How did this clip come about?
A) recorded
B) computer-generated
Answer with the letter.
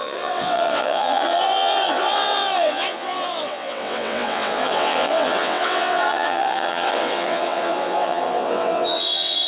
B